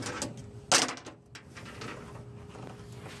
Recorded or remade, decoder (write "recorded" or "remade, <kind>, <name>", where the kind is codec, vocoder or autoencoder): recorded